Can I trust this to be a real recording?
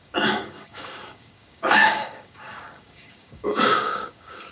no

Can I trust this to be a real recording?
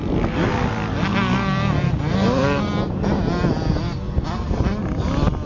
yes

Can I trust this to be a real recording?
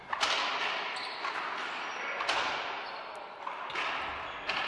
yes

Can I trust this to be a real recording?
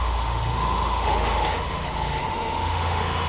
no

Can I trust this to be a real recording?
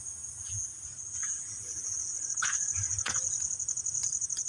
no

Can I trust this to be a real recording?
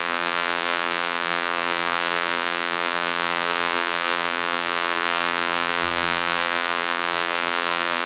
no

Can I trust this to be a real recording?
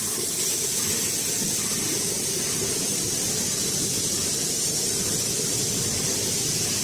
yes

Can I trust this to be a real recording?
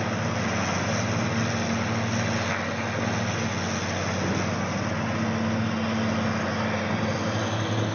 yes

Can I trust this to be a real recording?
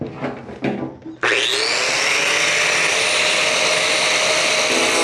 yes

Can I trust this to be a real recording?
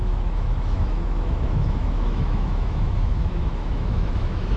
no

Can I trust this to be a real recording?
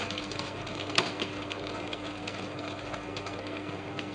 no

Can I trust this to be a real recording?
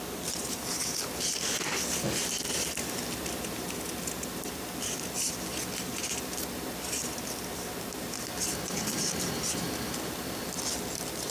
yes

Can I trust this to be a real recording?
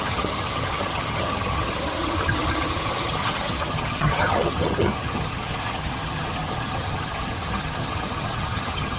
no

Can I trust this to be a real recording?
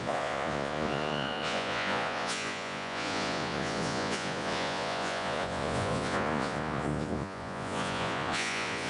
no